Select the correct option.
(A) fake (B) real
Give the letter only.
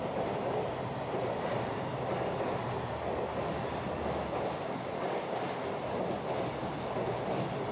B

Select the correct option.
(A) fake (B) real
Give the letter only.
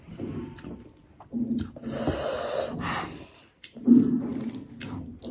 B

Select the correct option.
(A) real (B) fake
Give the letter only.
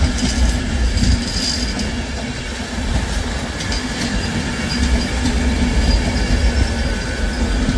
A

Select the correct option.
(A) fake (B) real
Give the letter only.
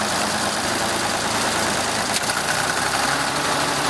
A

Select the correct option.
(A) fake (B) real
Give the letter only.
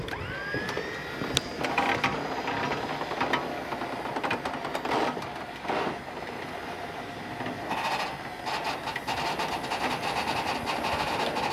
B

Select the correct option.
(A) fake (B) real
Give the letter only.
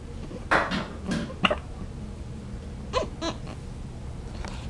B